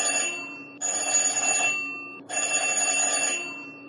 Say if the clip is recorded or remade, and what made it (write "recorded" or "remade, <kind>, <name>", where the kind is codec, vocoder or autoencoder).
recorded